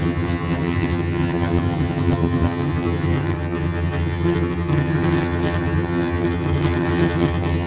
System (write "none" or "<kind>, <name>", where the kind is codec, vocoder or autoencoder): vocoder, HiFi-GAN